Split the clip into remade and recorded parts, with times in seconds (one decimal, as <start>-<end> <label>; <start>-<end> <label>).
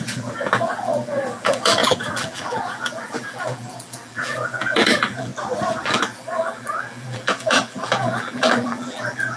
0.0-5.3 remade; 5.3-5.8 recorded; 5.8-9.4 remade